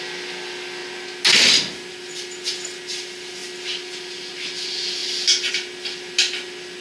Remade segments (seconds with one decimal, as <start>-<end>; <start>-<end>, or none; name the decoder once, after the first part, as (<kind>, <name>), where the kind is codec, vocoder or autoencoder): none